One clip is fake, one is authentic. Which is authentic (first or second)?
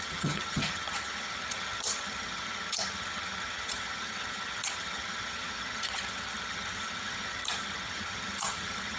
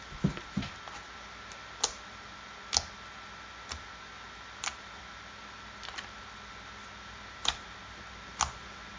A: second